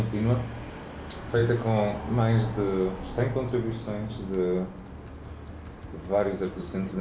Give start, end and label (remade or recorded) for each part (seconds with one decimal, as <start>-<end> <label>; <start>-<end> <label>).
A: 0.0-5.9 recorded; 5.9-6.6 remade; 6.6-7.0 recorded